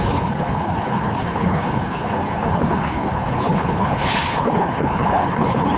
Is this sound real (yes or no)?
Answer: no